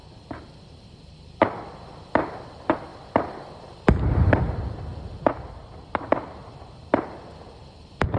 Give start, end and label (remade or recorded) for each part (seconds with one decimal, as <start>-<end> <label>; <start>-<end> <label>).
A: 0.0-2.5 remade; 2.5-2.9 recorded; 2.9-4.4 remade; 4.4-8.2 recorded